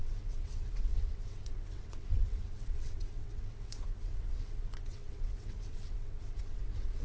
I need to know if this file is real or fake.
fake